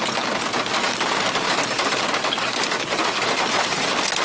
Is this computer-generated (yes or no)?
no